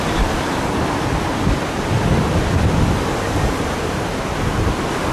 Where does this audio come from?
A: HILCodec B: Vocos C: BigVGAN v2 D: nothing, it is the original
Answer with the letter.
C